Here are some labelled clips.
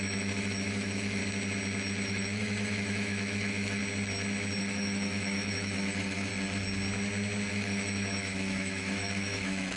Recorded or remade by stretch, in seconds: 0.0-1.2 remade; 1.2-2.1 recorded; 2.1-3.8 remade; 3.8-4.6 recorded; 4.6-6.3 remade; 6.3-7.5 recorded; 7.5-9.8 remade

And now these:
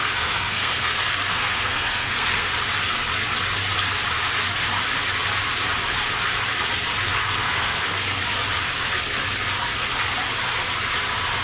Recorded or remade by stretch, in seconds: 0.0-2.5 remade; 2.5-7.2 recorded; 7.2-8.2 remade; 8.2-11.4 recorded

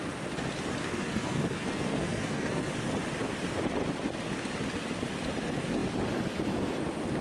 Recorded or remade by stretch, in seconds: 0.0-0.8 recorded; 0.8-2.7 remade; 2.7-7.2 recorded

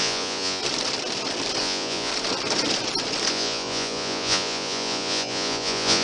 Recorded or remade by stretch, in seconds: 0.0-0.6 remade; 0.6-1.6 recorded; 1.6-2.1 remade; 2.1-3.3 recorded; 3.3-6.0 remade

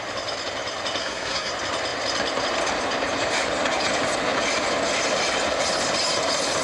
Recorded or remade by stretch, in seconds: 0.0-1.0 recorded; 1.0-1.5 remade; 1.5-6.6 recorded

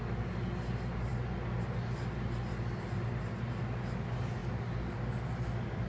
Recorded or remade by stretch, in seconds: 0.0-5.9 recorded

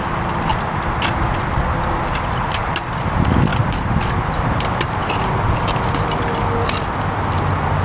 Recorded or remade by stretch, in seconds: 0.0-7.8 recorded

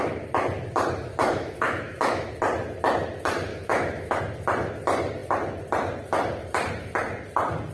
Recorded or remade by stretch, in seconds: 0.0-1.0 recorded; 1.0-2.3 remade; 2.3-3.5 recorded; 3.5-4.2 remade; 4.2-7.7 recorded